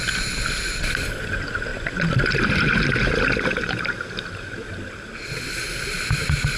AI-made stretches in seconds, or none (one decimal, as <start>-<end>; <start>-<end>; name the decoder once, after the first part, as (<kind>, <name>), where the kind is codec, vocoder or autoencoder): none